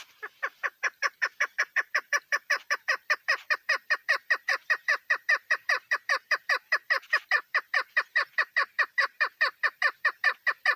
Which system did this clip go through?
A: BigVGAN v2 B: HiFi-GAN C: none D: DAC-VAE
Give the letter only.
A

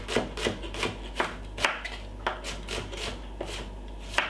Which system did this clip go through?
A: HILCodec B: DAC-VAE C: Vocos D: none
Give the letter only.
D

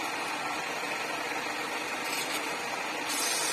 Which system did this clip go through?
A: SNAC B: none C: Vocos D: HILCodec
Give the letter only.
B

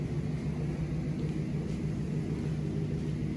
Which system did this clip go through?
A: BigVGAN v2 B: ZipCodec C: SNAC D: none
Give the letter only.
D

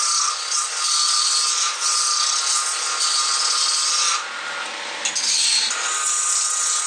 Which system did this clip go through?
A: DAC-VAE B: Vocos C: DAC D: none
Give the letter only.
D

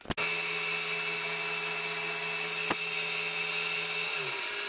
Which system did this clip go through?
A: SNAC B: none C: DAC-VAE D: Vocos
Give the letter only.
B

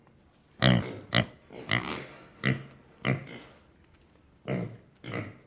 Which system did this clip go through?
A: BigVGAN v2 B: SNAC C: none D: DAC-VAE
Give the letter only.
C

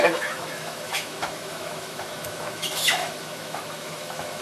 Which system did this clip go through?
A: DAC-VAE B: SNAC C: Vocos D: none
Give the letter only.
A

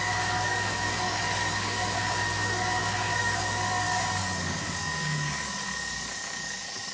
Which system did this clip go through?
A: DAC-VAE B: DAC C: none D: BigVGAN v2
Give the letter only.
B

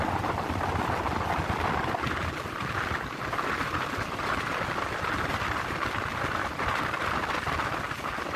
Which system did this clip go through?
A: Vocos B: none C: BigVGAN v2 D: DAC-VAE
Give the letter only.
B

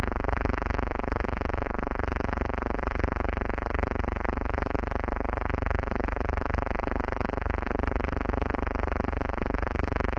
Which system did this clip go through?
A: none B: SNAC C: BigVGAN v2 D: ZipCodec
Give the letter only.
B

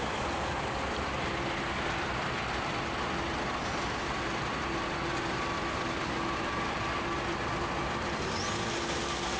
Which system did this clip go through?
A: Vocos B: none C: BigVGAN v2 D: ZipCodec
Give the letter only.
B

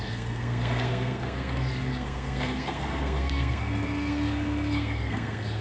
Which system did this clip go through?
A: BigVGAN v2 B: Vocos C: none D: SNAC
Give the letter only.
D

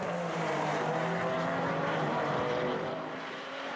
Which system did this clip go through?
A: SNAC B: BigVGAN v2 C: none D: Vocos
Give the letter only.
B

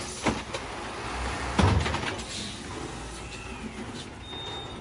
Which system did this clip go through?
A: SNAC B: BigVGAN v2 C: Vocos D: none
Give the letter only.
D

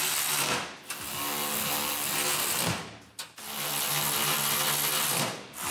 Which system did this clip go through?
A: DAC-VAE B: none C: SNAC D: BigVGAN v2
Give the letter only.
B